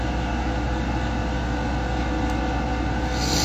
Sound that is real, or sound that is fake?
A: real